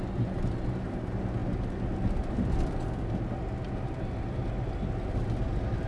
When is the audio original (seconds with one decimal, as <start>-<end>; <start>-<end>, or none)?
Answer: 0.0-5.9